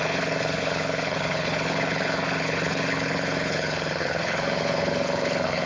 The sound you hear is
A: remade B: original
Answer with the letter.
A